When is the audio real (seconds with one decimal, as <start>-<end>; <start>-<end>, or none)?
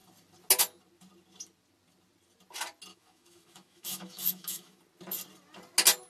0.0-2.9; 4.8-6.1